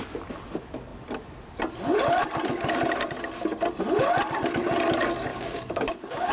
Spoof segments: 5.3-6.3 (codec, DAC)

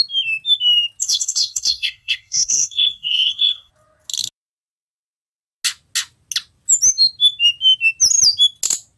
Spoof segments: 1.0-3.7 (codec, SNAC)